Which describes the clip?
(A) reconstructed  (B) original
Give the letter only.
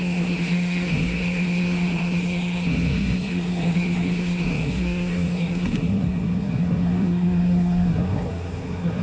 A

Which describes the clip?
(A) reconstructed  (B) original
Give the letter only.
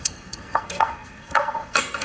A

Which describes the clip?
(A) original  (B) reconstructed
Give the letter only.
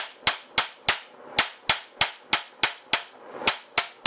A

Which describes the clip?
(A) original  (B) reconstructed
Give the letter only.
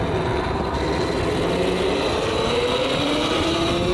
A